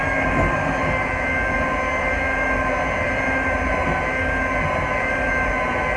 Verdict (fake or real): real